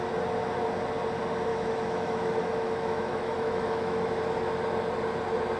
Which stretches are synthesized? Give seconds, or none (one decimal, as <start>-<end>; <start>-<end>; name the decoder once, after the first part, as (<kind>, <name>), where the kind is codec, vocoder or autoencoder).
1.5-4.2 (autoencoder, DAC-VAE)